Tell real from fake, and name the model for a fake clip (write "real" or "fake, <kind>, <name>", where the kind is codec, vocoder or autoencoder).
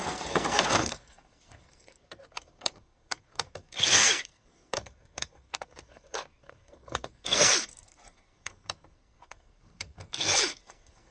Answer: fake, codec, SNAC